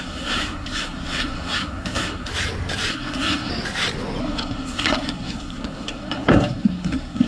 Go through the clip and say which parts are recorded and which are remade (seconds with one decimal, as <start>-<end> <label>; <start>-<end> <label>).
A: 0.0-2.3 remade; 2.3-2.9 recorded; 2.9-3.5 remade; 3.5-4.2 recorded; 4.2-7.3 remade